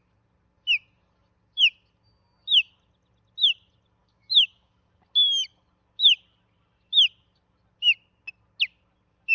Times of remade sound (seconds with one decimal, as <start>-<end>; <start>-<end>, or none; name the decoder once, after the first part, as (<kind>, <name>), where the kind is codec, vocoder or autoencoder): 4.0-4.9 (autoencoder, DAC-VAE)